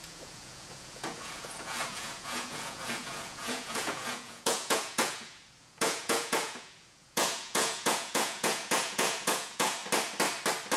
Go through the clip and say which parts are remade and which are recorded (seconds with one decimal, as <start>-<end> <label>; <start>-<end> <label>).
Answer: 0.0-9.8 remade; 9.8-10.8 recorded